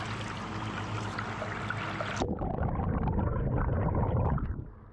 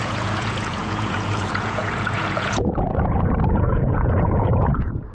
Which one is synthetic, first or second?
second